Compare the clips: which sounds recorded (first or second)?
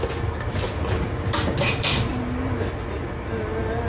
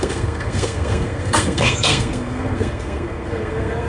first